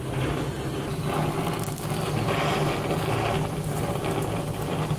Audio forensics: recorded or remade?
recorded